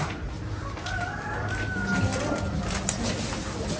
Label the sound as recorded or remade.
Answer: recorded